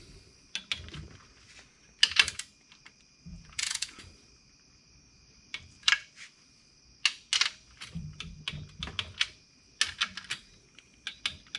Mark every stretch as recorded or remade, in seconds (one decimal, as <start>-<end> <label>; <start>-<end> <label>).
0.0-3.3 recorded; 3.3-4.0 remade; 4.0-11.6 recorded

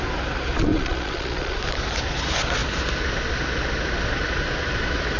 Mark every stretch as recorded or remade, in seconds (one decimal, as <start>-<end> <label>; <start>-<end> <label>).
0.0-0.7 recorded; 0.7-1.6 remade; 1.6-5.2 recorded